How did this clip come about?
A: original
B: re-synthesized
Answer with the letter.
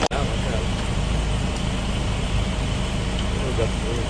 A